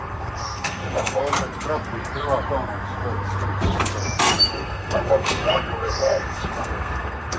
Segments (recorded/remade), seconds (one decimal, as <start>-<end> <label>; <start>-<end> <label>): 0.0-1.2 remade; 1.2-4.5 recorded; 4.5-7.4 remade